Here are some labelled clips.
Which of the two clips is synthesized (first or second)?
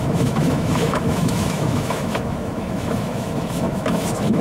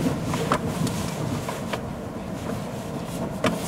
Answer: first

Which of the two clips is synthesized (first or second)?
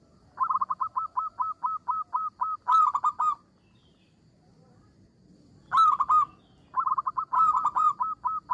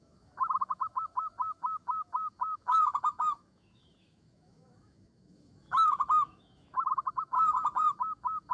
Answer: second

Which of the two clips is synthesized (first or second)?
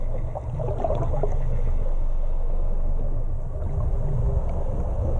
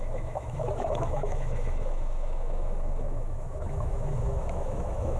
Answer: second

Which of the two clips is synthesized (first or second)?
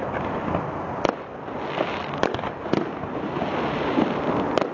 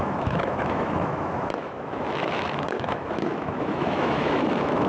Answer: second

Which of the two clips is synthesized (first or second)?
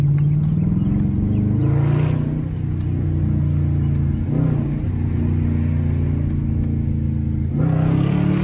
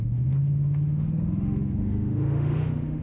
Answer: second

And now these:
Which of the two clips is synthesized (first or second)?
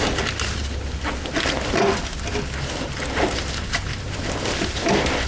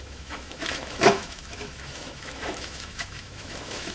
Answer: second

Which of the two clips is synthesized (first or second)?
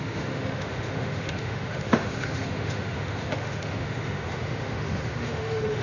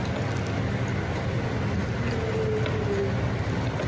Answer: first